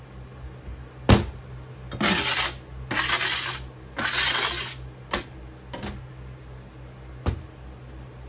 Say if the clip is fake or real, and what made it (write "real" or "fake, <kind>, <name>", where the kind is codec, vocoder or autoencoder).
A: real